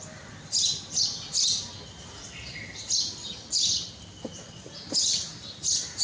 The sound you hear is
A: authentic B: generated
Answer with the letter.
A